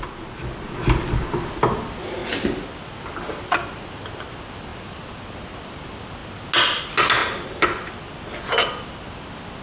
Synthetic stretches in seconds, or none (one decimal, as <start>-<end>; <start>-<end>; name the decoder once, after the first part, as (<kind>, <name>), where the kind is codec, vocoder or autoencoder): none